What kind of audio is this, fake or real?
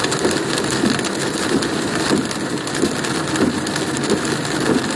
real